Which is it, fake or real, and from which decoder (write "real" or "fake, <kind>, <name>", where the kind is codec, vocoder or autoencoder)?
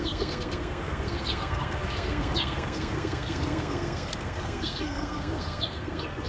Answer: fake, codec, SNAC